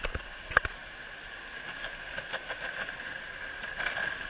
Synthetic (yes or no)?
no